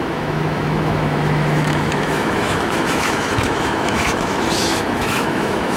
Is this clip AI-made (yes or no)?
yes